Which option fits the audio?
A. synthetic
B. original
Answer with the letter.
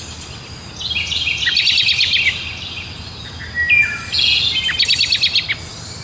B